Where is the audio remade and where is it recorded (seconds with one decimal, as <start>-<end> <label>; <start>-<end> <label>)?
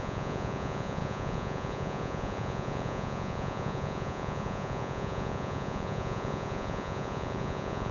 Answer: 0.0-7.9 remade